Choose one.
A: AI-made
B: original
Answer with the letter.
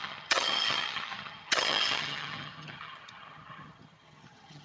A